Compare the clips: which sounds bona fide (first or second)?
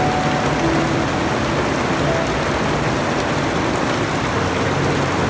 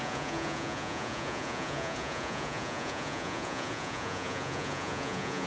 first